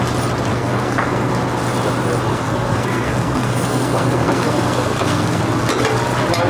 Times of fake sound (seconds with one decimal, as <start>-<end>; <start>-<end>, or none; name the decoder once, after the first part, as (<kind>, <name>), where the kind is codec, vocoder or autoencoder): 0.5-1.3 (codec, SNAC); 2.3-5.4